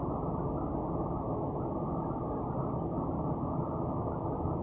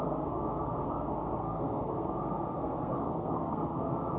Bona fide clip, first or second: first